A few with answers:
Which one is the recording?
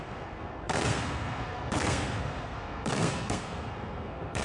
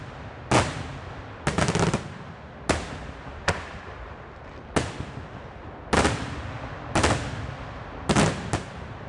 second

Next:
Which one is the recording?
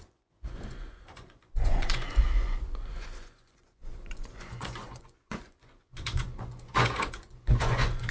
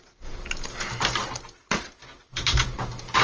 second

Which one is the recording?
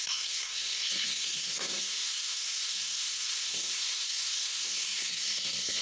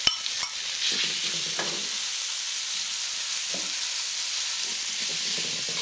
second